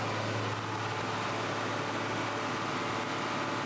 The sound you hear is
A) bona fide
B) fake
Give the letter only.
A